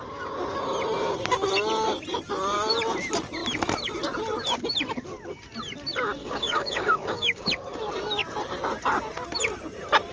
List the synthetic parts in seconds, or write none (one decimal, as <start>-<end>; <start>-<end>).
6.2-7.5